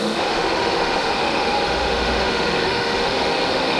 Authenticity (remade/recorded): remade